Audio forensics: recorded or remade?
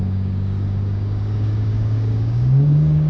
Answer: remade